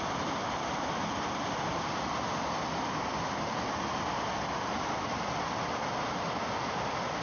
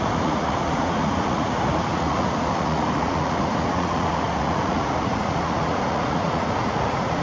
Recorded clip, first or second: first